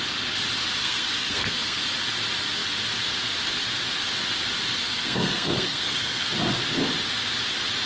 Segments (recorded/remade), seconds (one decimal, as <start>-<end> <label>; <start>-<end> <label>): 0.0-0.8 recorded; 0.8-1.8 remade; 1.8-4.8 recorded; 4.8-6.3 remade; 6.3-7.9 recorded